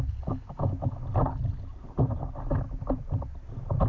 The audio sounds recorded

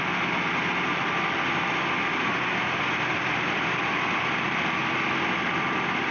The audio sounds recorded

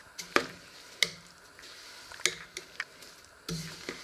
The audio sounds recorded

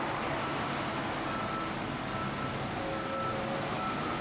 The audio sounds recorded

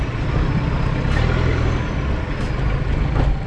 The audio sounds recorded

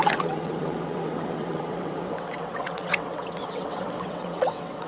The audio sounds remade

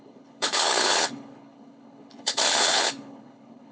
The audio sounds remade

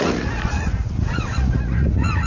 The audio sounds remade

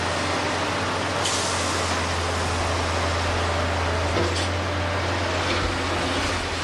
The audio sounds recorded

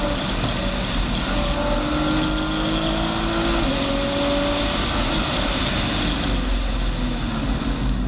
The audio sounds recorded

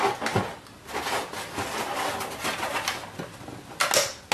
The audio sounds recorded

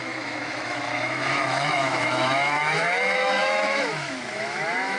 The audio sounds remade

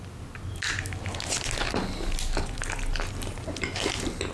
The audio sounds recorded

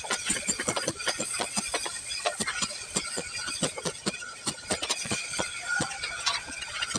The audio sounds remade